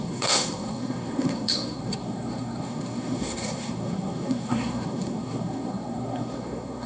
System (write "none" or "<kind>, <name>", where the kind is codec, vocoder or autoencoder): codec, SNAC